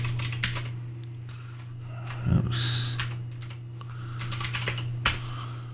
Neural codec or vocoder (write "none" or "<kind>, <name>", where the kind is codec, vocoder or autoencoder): none